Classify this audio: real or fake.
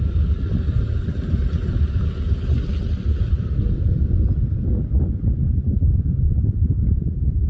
real